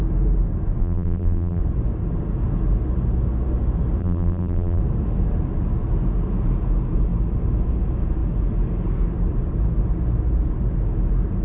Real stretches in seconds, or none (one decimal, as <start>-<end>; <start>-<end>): 0.0-0.8; 1.6-4.0; 4.8-11.4